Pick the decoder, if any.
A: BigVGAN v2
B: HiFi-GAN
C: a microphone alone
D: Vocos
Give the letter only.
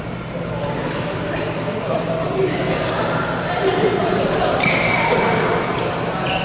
A